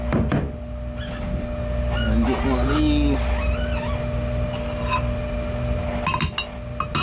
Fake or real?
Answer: real